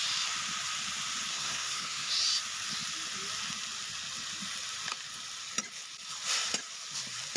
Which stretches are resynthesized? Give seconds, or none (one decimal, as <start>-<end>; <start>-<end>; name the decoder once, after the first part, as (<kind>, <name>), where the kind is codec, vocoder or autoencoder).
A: 1.3-2.1 (codec, SNAC)